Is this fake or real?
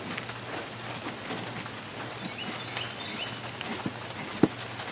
real